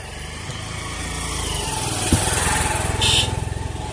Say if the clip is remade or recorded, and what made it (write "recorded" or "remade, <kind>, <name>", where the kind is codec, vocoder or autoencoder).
recorded